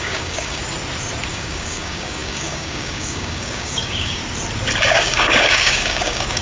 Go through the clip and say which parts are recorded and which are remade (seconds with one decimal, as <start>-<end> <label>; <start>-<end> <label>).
0.0-0.6 remade; 0.6-1.3 recorded; 1.3-4.2 remade; 4.2-4.9 recorded; 4.9-6.4 remade